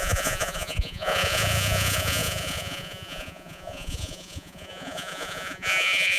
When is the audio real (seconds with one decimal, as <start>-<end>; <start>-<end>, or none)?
none